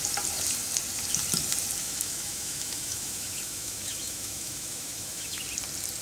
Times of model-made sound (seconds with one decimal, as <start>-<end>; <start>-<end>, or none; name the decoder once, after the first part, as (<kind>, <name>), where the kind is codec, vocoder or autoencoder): 1.8-5.4 (autoencoder, DAC-VAE)